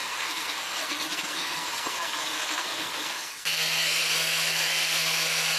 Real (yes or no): no